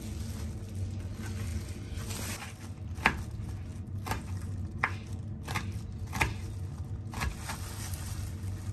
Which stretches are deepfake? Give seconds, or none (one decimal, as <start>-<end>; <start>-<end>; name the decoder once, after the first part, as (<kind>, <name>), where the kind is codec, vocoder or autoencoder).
none